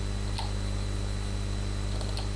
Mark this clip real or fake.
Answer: real